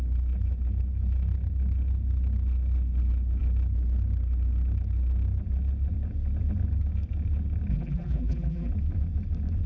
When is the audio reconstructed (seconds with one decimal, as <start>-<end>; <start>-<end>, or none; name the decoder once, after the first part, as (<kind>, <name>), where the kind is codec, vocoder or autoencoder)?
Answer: 7.7-8.7 (vocoder, BigVGAN v2)